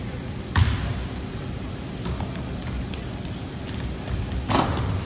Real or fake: real